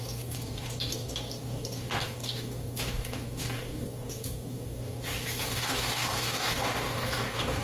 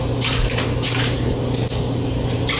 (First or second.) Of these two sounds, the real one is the second